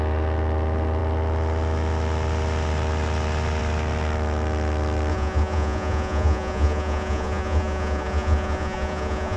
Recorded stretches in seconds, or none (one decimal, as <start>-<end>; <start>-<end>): 0.0-5.1